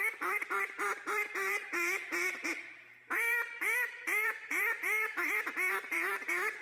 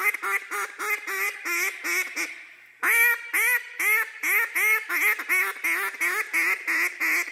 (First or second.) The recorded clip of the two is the second